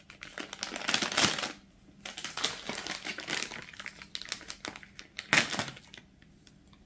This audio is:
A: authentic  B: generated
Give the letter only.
A